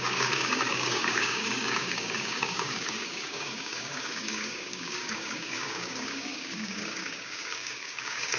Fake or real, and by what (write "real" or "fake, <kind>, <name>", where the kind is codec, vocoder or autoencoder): fake, codec, DAC